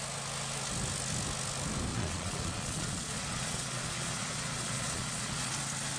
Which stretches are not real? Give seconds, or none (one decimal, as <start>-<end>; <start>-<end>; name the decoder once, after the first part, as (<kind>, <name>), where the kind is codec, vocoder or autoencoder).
1.9-5.5 (vocoder, Vocos)